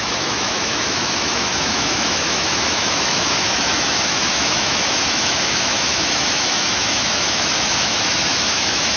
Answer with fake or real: fake